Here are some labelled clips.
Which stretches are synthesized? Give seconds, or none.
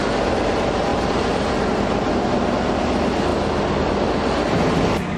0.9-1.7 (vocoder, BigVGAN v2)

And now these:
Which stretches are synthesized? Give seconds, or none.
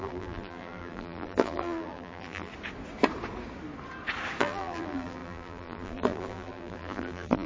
0.0-2.5 (vocoder, BigVGAN v2); 4.4-7.5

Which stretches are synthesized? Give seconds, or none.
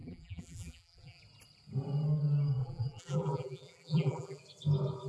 0.0-1.2 (vocoder, BigVGAN v2); 2.6-4.4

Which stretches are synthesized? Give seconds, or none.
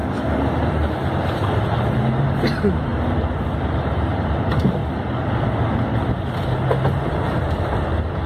0.0-2.9 (vocoder, BigVGAN v2); 3.7-4.8; 7.0-8.3